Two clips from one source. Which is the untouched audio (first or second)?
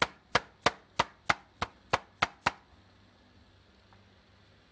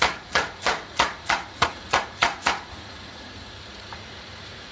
first